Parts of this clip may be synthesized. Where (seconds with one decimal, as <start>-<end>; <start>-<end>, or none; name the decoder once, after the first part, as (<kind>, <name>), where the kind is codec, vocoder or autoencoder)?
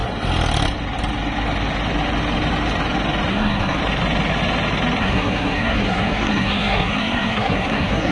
3.3-3.8 (codec, SNAC); 5.0-8.1